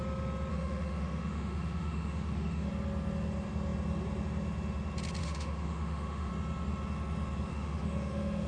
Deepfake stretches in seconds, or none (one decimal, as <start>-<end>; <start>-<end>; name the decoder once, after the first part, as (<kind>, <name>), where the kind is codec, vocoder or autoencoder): 0.5-2.7 (autoencoder, DAC-VAE); 5.2-6.3; 7.5-8.5